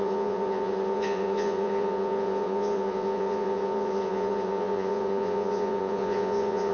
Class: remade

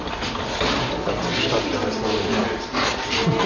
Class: recorded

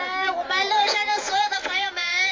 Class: remade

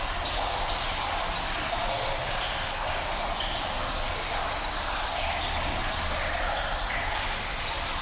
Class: recorded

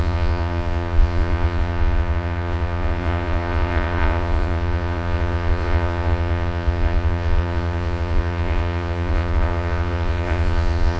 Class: remade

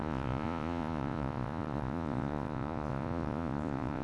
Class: remade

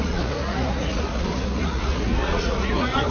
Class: remade